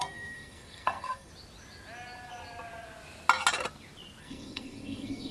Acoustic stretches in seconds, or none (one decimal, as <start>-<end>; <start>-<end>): 1.3-4.2